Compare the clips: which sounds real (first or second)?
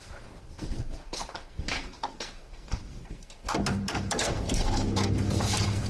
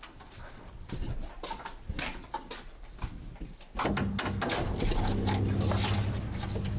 second